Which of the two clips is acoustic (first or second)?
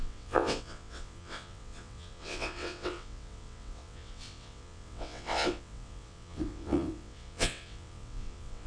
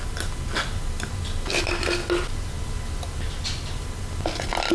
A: second